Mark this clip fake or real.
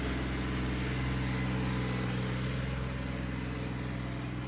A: real